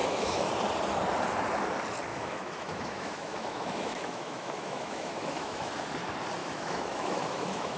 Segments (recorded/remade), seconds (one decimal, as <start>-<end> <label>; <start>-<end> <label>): 0.0-0.5 remade; 0.5-2.1 recorded; 2.1-5.7 remade; 5.7-6.4 recorded; 6.4-7.8 remade